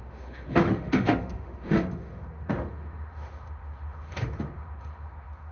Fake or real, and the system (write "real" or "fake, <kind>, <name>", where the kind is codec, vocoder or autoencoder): fake, autoencoder, DAC-VAE